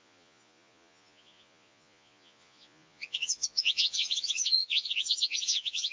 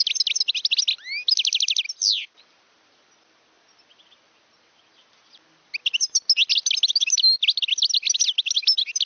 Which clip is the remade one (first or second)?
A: first